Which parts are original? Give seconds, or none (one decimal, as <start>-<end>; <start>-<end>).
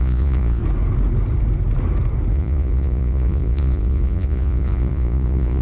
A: 0.6-2.3